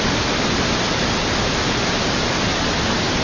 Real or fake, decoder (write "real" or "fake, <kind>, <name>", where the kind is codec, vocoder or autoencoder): real